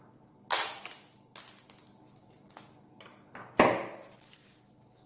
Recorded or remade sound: recorded